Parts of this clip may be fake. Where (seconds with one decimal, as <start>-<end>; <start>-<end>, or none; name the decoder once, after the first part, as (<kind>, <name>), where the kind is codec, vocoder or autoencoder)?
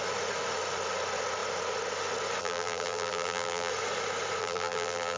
2.4-3.7 (vocoder, BigVGAN v2); 4.4-5.2